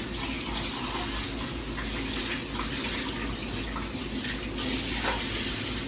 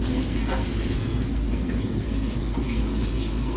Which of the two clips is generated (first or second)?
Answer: second